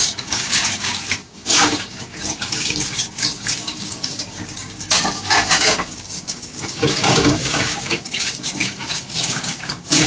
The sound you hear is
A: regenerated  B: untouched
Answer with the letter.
A